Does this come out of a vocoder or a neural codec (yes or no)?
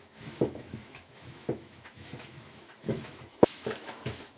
yes